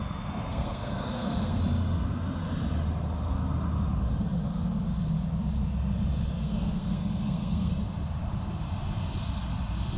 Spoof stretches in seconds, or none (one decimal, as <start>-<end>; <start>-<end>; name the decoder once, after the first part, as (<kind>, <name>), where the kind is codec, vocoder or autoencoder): 0.5-1.6 (codec, SNAC); 6.4-7.7